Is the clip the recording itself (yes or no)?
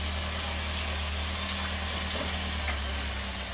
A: yes